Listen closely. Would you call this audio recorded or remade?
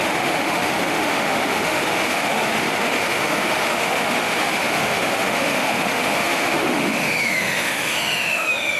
remade